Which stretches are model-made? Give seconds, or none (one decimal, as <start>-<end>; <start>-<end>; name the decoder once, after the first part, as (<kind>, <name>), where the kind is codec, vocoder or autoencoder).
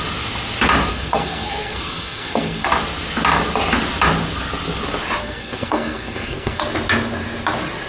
0.9-2.7 (codec, SNAC); 5.2-6.6